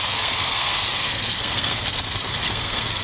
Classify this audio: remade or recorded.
remade